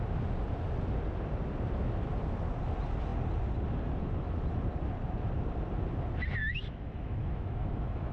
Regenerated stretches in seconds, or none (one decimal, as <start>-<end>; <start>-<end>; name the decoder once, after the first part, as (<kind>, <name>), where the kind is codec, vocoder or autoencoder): 6.5-8.1 (autoencoder, DAC-VAE)